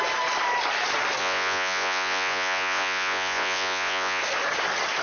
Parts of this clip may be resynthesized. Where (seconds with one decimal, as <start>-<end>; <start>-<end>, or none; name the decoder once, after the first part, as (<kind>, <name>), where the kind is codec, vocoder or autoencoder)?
1.2-4.2 (vocoder, Vocos)